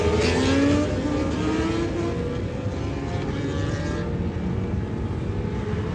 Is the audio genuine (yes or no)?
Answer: yes